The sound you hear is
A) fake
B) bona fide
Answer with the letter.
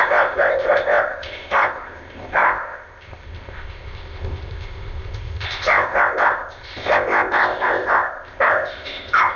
A